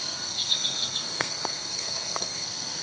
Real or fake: fake